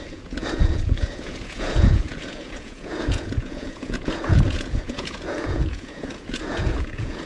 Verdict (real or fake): fake